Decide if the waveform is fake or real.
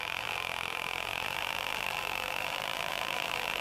fake